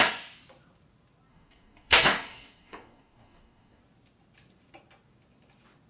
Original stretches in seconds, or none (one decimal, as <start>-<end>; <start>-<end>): 0.0-1.3; 3.8-5.9